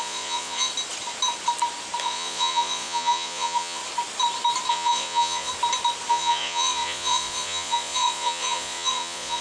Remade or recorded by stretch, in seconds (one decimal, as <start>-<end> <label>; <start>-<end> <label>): 0.0-0.7 remade; 0.7-2.0 recorded; 2.0-3.8 remade; 3.8-4.7 recorded; 4.7-5.5 remade; 5.5-6.1 recorded; 6.1-9.4 remade